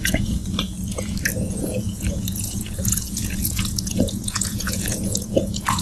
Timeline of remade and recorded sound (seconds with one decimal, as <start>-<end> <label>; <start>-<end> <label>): 0.0-0.4 remade; 0.4-1.5 recorded; 1.5-5.8 remade